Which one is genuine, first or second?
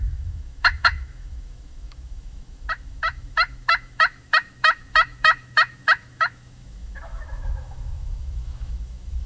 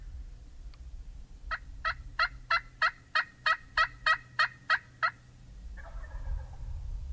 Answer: second